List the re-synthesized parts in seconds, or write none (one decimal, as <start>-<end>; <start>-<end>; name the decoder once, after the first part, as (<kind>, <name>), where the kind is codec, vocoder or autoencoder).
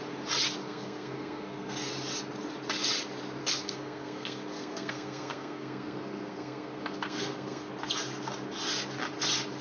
0.6-1.9 (codec, SNAC); 3.4-7.7